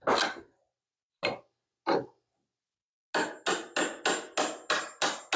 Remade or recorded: recorded